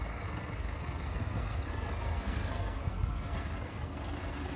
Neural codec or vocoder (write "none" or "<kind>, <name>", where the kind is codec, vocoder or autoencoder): codec, SNAC